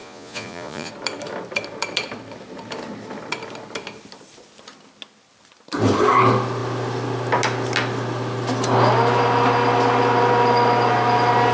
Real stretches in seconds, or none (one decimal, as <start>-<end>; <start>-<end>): 0.9-11.5